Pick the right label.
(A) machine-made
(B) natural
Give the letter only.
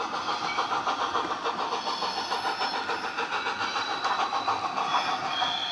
B